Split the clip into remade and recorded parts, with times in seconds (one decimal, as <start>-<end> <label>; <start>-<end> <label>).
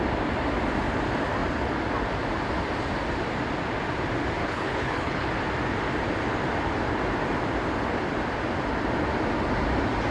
0.0-4.4 recorded; 4.4-5.3 remade; 5.3-10.1 recorded